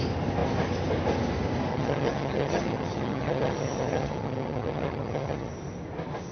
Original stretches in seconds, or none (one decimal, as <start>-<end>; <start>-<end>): 0.0-1.7; 5.5-6.3